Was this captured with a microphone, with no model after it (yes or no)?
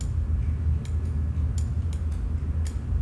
yes